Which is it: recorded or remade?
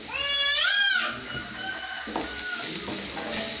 recorded